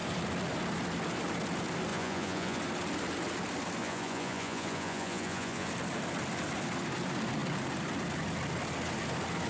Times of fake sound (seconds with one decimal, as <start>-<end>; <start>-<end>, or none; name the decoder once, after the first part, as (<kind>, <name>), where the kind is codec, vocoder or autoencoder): 1.9-2.6 (vocoder, Vocos); 3.8-5.7